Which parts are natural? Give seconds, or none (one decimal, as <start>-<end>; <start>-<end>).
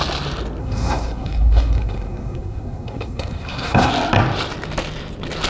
0.0-0.6; 3.9-5.5